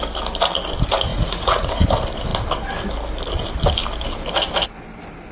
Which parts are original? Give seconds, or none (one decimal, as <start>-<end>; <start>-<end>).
0.0-1.1; 1.7-5.3